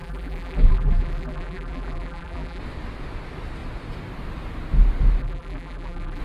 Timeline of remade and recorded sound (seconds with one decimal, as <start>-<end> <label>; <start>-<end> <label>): 0.0-2.6 remade; 2.6-5.2 recorded; 5.2-6.2 remade